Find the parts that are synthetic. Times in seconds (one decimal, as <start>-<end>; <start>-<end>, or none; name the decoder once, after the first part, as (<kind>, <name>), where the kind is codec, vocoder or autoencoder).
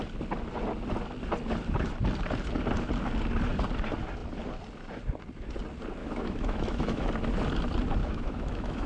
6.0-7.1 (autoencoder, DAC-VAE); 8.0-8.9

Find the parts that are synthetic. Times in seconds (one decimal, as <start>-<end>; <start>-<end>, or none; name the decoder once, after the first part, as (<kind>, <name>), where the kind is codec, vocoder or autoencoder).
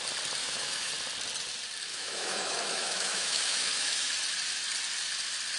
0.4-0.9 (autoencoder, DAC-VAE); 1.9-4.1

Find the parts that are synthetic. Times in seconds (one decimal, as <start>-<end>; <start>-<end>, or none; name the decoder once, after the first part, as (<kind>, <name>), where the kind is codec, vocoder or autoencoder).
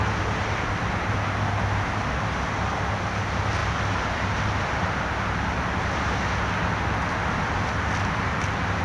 none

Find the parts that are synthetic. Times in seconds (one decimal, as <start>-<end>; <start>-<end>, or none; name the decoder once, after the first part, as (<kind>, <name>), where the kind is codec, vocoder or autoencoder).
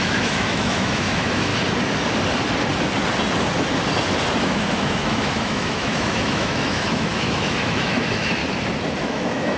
0.0-1.5 (autoencoder, DAC-VAE); 4.4-8.4; 9.0-9.6